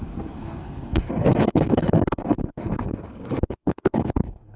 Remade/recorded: remade